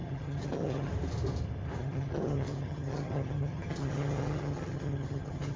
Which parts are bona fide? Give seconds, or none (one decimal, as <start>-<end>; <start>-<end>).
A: 0.9-1.8